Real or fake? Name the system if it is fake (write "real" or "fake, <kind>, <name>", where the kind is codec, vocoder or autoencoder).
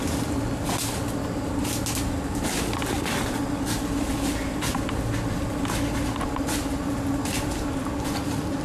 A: real